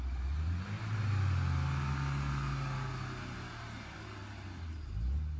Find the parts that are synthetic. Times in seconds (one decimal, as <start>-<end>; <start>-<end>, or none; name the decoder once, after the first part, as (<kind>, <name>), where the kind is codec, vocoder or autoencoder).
none